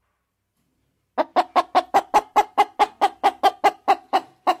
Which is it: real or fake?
real